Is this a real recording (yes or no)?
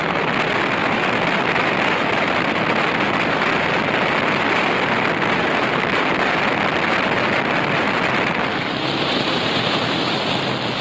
yes